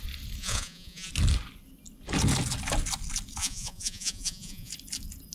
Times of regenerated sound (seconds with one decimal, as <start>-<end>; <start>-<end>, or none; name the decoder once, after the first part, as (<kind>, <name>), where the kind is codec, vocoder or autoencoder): 0.4-1.1 (vocoder, Vocos); 3.4-4.7